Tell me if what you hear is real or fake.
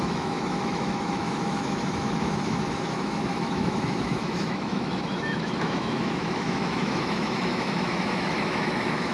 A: fake